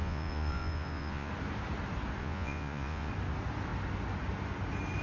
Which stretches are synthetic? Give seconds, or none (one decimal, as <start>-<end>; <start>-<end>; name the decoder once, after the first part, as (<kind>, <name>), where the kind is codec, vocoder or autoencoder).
0.0-1.3 (vocoder, Vocos); 2.2-3.1

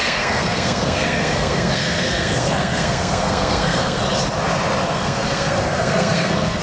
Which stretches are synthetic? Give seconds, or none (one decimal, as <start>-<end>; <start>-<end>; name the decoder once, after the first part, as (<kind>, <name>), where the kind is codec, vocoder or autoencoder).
0.0-4.0 (codec, SNAC); 4.9-6.6

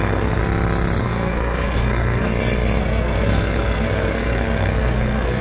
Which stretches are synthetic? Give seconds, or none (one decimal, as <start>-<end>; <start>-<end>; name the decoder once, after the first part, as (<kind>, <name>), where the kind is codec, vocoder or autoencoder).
0.0-0.4 (codec, SNAC); 1.0-2.3; 2.8-5.4

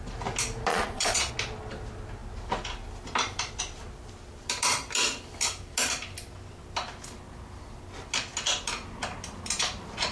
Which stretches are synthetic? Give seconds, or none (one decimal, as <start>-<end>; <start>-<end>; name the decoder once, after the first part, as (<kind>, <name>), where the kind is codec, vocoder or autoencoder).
0.7-1.3 (vocoder, Vocos)

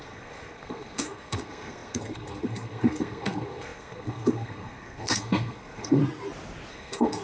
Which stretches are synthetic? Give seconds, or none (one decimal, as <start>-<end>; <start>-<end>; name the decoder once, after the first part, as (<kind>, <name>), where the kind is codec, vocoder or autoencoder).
0.0-6.0 (codec, SNAC); 6.7-7.2

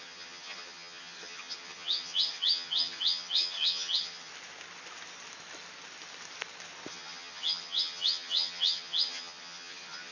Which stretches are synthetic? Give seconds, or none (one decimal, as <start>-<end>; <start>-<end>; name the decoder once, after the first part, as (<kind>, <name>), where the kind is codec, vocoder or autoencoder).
0.0-4.3 (vocoder, HiFi-GAN); 6.9-10.1

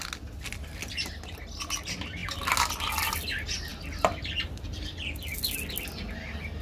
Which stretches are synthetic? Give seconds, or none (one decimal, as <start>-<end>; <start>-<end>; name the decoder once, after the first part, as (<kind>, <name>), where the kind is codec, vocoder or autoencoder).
3.7-5.4 (vocoder, BigVGAN v2)

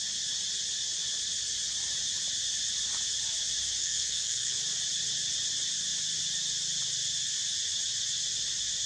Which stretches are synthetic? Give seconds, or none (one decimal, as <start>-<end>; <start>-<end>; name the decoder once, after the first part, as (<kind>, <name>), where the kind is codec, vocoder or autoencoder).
3.8-4.6 (codec, SNAC)